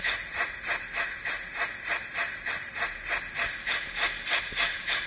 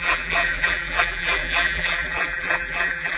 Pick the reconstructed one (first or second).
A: second